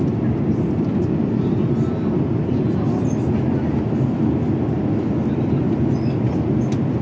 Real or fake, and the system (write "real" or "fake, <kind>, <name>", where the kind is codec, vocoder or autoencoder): real